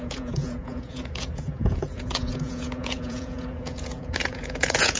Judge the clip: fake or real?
fake